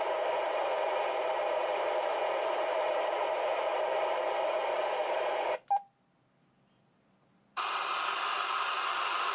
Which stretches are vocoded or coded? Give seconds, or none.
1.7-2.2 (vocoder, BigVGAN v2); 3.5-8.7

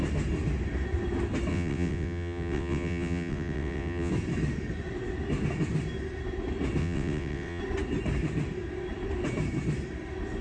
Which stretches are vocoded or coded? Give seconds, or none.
1.5-4.1 (vocoder, WaveNeXt); 6.8-7.6

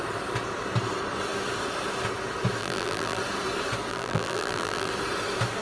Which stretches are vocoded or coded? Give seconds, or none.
2.6-3.2 (vocoder, BigVGAN v2); 3.9-4.9

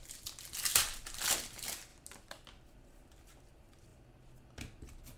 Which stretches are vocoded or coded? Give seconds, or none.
none

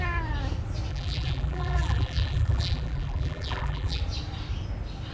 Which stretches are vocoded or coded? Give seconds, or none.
0.9-4.0 (vocoder, BigVGAN v2)

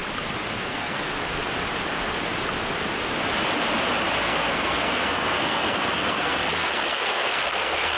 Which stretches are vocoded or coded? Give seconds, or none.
0.6-1.1 (codec, SNAC); 4.2-8.0

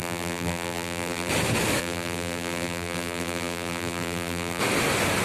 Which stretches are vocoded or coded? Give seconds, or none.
0.0-1.3 (vocoder, BigVGAN v2); 1.8-4.6